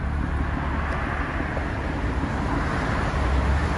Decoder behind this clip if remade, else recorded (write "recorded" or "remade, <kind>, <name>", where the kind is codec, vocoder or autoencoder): recorded